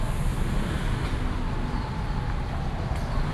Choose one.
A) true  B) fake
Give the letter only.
A